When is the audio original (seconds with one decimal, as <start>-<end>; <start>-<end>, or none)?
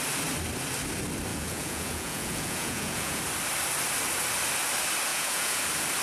0.0-1.3; 3.2-5.1; 5.6-6.0